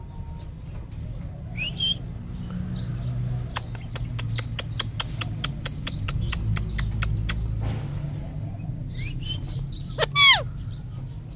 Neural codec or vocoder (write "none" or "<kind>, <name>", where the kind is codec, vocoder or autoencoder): none